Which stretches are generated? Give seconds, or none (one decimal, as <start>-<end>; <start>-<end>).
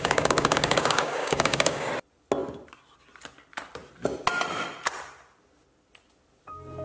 0.0-1.9